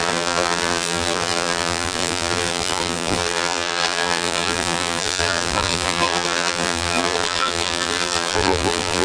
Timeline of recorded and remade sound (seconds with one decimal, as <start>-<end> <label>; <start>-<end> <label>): 0.0-9.0 remade